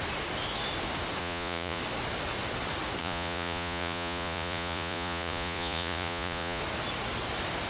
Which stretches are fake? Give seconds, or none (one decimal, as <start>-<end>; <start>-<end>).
1.2-1.8; 3.0-6.6